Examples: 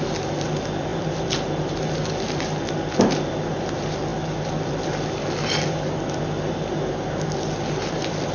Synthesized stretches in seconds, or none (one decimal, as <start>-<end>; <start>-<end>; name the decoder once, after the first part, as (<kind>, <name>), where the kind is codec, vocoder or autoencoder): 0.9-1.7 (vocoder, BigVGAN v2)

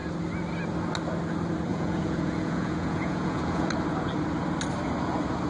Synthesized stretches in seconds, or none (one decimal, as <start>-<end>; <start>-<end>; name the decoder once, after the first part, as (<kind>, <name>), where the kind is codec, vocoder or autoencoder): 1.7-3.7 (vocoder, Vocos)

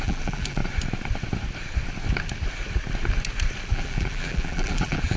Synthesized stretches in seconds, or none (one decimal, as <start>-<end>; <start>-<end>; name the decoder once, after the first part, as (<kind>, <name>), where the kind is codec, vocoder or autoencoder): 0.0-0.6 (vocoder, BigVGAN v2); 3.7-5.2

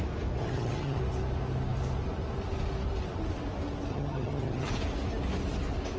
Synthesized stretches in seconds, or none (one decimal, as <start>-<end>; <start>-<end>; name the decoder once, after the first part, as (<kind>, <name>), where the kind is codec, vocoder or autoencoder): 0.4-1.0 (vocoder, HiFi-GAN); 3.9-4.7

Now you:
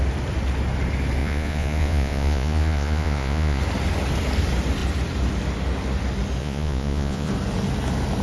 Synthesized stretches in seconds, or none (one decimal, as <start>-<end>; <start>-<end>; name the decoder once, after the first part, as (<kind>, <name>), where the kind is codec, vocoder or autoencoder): 1.2-3.6 (vocoder, Vocos); 6.4-7.3